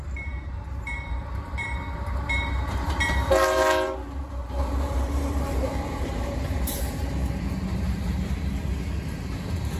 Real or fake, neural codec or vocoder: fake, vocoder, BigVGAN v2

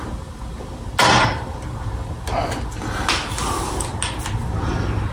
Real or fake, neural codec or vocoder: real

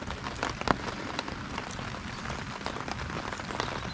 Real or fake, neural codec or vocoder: real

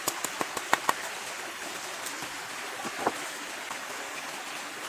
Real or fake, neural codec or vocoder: real